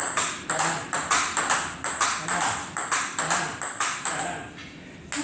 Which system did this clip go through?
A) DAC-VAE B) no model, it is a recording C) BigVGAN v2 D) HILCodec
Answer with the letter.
B